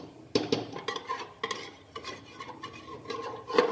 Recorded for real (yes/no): yes